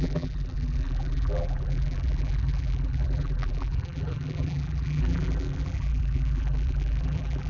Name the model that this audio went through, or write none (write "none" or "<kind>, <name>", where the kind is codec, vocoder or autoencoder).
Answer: vocoder, BigVGAN v2